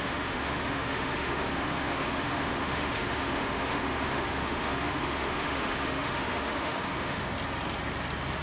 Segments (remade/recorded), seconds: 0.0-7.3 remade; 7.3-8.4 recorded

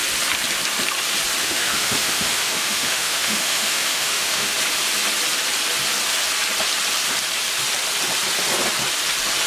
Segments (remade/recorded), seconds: 0.0-1.4 recorded; 1.4-4.5 remade; 4.5-9.5 recorded

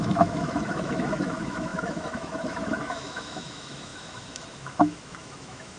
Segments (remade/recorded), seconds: 0.0-5.8 remade

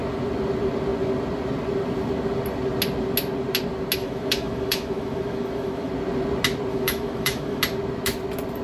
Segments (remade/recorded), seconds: 0.0-4.0 recorded; 4.0-5.9 remade; 5.9-6.7 recorded; 6.7-7.6 remade; 7.6-8.6 recorded

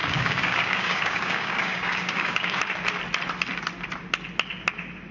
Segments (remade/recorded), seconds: 0.0-2.7 remade; 2.7-5.1 recorded